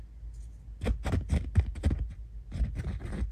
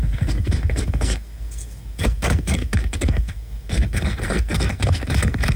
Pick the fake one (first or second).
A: second